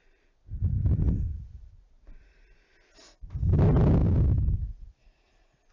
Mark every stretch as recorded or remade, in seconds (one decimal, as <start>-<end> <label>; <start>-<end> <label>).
0.0-4.0 recorded; 4.0-5.7 remade